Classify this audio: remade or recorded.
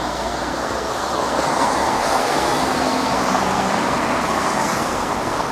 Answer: remade